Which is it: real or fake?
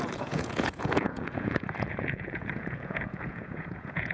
fake